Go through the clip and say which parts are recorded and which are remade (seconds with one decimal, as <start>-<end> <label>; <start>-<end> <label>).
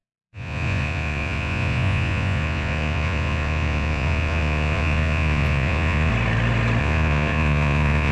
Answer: 0.0-6.1 remade; 6.1-6.8 recorded; 6.8-8.1 remade